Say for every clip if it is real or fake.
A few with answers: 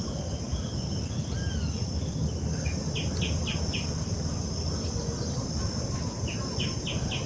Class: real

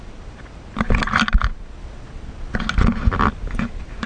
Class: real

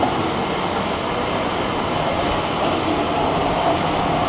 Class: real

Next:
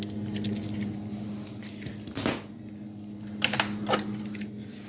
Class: real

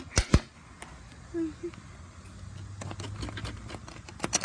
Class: real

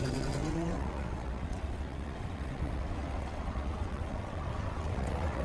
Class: fake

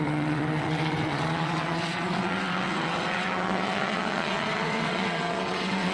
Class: fake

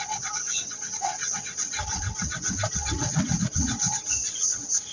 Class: fake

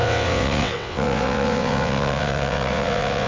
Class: fake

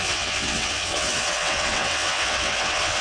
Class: fake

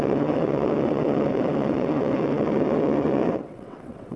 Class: fake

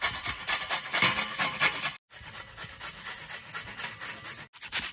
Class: real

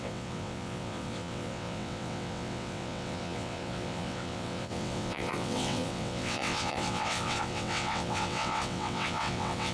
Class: fake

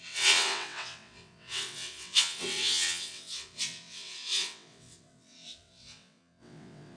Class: fake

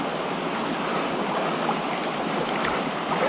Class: real